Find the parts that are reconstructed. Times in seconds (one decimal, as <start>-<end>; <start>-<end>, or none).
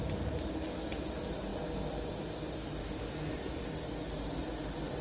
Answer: none